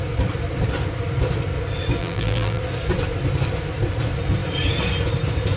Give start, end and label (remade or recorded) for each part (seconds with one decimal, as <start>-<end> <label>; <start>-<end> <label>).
0.0-2.0 recorded; 2.0-2.6 remade; 2.6-5.6 recorded